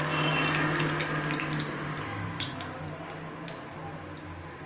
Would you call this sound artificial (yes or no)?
no